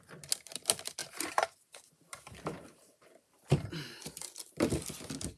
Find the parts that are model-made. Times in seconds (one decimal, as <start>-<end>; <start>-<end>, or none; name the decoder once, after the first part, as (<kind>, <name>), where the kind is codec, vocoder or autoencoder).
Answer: 1.0-4.2 (vocoder, BigVGAN v2)